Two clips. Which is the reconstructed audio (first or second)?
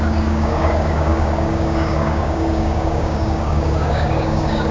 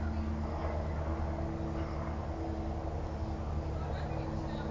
first